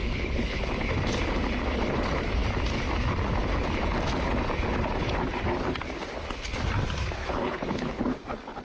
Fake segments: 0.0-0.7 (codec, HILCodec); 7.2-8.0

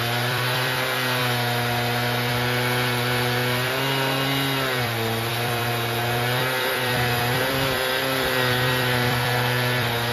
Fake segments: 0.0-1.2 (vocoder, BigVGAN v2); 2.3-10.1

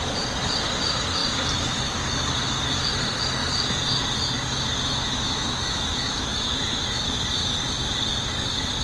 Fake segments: 5.0-6.8 (autoencoder, DAC-VAE)

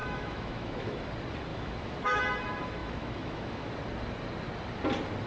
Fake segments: 0.0-1.0 (autoencoder, DAC-VAE); 1.5-2.2; 2.8-3.7

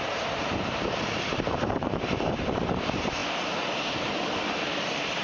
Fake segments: 0.0-5.2 (vocoder, BigVGAN v2)

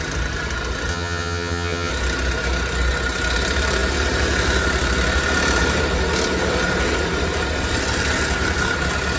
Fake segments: 0.9-1.9 (vocoder, HiFi-GAN)

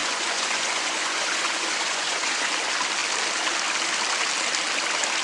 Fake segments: 0.0-2.5 (vocoder, Vocos)

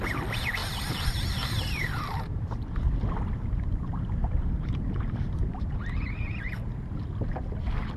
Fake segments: 0.6-2.8 (vocoder, BigVGAN v2); 4.2-5.8